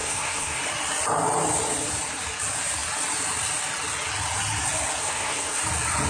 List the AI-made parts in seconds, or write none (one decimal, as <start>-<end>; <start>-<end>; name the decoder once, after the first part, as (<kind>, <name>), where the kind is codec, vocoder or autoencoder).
0.0-0.6 (codec, SNAC); 5.0-5.6